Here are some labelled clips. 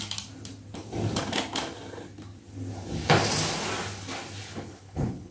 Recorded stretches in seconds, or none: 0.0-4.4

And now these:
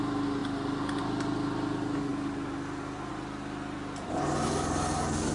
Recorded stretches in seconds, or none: 0.0-5.3

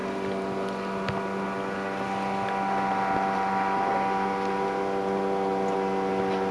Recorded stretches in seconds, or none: 0.0-6.5

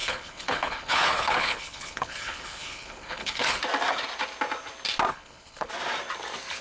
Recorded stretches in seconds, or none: 3.6-5.1; 5.7-6.6

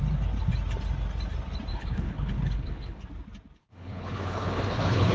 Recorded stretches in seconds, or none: 0.0-1.7; 3.0-3.6

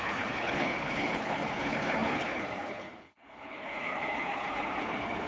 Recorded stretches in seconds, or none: none

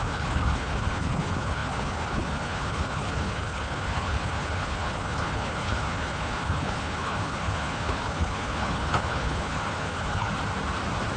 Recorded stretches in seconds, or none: 10.3-11.2